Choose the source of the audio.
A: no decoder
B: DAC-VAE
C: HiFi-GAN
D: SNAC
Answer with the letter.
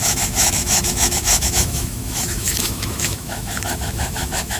B